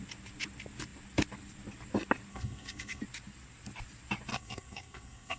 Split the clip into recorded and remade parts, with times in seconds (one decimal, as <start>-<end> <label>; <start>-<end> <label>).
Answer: 0.0-2.3 recorded; 2.3-3.0 remade; 3.0-4.3 recorded; 4.3-5.4 remade